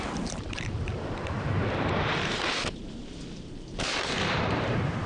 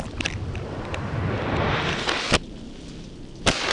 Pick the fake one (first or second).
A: first